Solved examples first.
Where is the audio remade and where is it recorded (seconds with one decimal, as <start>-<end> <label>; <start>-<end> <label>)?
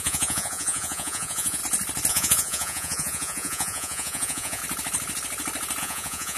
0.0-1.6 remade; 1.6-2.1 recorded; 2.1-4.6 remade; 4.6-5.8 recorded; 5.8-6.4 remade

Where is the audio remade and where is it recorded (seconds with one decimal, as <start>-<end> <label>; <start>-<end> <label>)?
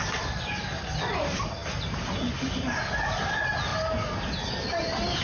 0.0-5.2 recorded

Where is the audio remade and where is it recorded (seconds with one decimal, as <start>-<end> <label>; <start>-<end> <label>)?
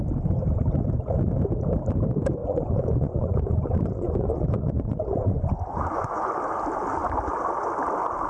0.0-2.4 recorded; 2.4-6.3 remade; 6.3-8.3 recorded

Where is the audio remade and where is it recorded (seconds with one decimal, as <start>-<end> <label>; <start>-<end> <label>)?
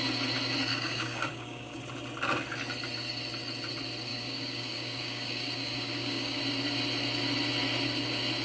0.0-0.7 recorded; 0.7-1.8 remade; 1.8-4.1 recorded; 4.1-6.4 remade; 6.4-8.4 recorded